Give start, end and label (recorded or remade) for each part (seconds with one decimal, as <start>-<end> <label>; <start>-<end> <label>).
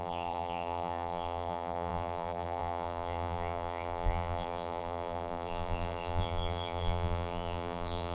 0.0-8.1 remade